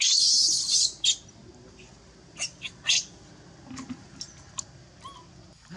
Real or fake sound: real